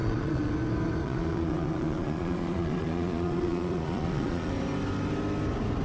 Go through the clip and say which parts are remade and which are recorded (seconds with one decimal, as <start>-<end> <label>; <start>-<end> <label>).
0.0-0.5 remade; 0.5-1.0 recorded; 1.0-4.5 remade; 4.5-5.8 recorded